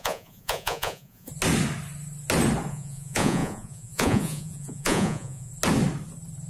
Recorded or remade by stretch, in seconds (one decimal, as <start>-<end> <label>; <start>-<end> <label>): 0.0-1.3 remade; 1.3-2.7 recorded; 2.7-5.5 remade; 5.5-6.5 recorded

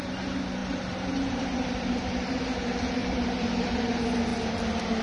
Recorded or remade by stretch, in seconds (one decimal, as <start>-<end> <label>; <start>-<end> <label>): 0.0-0.6 recorded; 0.6-2.3 remade; 2.3-3.0 recorded; 3.0-3.8 remade; 3.8-5.0 recorded

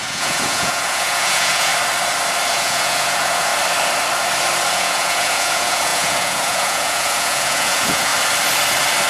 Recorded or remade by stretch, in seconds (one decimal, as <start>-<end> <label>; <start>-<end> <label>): 0.0-1.7 remade; 1.7-2.5 recorded; 2.5-3.5 remade; 3.5-4.7 recorded; 4.7-8.1 remade; 8.1-9.1 recorded

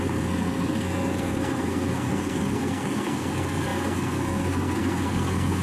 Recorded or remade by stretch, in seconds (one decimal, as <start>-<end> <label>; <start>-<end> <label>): 0.0-5.6 remade

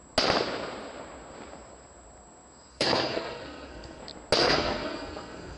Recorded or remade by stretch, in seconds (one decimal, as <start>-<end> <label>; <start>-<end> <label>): 0.0-2.7 recorded; 2.7-4.0 remade; 4.0-4.4 recorded; 4.4-5.6 remade